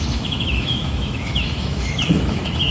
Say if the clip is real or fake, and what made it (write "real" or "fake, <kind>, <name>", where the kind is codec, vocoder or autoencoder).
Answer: fake, autoencoder, DAC-VAE